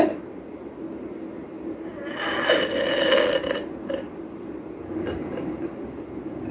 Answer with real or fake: real